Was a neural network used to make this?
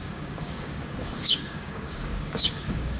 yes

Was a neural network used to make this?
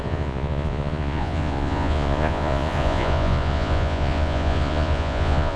yes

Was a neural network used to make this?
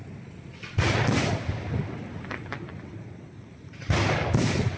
no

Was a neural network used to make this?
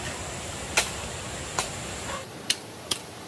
no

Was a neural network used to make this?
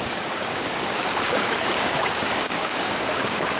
yes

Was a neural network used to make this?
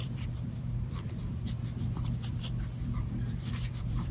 yes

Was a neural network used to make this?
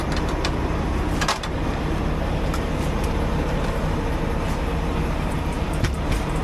yes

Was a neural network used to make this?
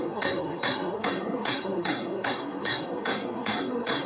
yes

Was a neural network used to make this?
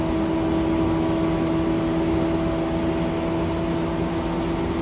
no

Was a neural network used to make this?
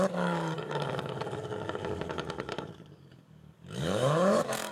yes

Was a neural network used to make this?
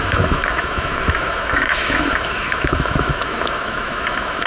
yes